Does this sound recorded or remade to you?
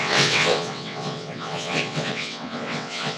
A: remade